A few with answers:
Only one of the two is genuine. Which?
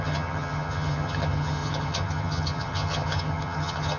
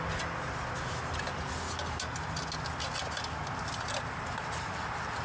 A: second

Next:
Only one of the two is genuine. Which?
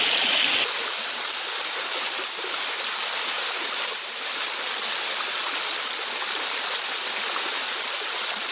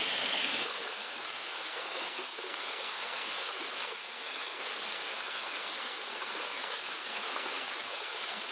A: first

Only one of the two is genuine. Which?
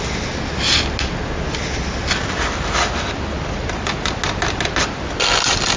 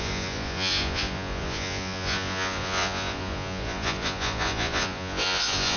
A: first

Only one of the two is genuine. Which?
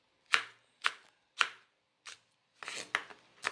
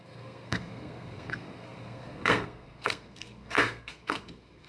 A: first